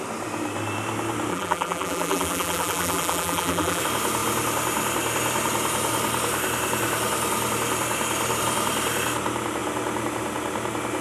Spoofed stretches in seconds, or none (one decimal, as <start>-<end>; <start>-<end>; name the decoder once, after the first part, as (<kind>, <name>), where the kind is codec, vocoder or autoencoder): 1.3-3.8 (vocoder, BigVGAN v2)